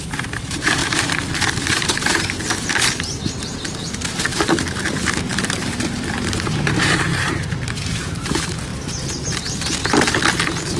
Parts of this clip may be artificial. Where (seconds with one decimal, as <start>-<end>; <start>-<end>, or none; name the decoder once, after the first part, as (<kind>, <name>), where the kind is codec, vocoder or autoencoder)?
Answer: 0.0-8.7 (vocoder, BigVGAN v2)